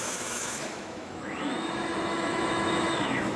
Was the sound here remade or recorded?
remade